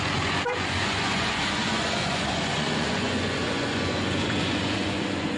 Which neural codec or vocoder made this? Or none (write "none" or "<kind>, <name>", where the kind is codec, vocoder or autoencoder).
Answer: vocoder, Vocos